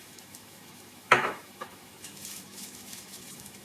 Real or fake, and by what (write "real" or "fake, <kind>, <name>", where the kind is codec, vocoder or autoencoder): fake, autoencoder, DAC-VAE